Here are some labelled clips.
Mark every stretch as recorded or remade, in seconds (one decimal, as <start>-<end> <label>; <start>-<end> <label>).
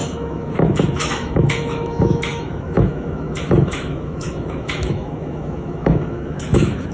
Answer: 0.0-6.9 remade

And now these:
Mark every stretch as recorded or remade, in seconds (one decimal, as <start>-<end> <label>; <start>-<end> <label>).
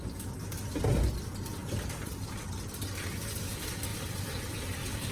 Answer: 0.0-5.1 recorded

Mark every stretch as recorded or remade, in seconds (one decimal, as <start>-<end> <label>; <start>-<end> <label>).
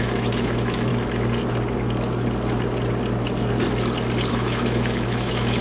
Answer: 0.0-0.9 remade; 0.9-4.3 recorded; 4.3-5.6 remade